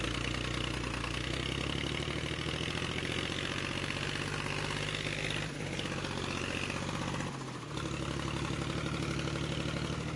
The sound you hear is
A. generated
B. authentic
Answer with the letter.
B